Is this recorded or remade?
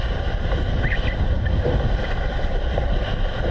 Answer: recorded